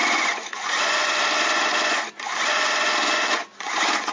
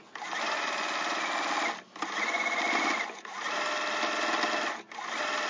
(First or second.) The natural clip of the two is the second